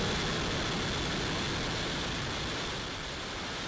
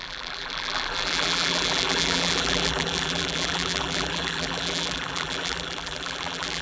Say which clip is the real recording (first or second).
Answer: first